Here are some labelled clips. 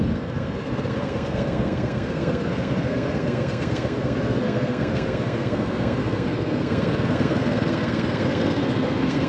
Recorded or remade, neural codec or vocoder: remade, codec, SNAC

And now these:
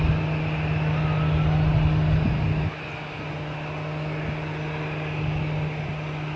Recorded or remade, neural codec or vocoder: recorded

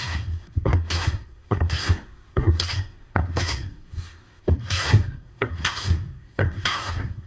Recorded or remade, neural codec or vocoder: remade, codec, SNAC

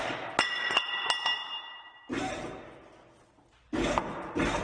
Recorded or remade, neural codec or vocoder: recorded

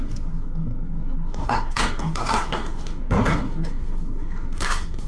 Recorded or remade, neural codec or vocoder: remade, codec, SNAC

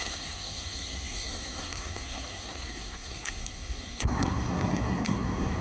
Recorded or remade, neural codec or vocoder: remade, codec, SNAC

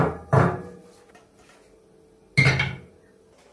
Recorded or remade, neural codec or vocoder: recorded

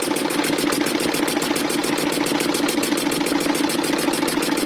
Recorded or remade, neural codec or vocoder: recorded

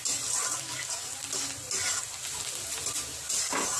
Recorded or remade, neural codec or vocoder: recorded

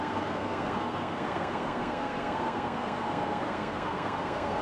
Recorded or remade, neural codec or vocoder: remade, codec, SNAC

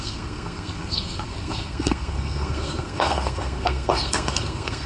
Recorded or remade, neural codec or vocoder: remade, codec, SNAC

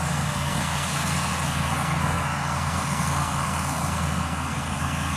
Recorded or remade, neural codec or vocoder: remade, codec, SNAC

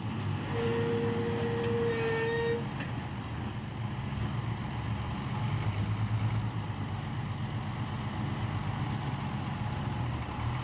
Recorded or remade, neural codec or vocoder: recorded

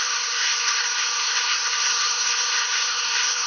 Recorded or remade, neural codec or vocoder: remade, codec, SNAC